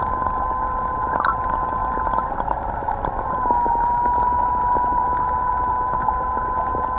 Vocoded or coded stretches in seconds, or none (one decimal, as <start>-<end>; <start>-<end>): none